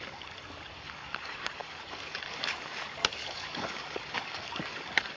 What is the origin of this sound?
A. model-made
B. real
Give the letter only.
A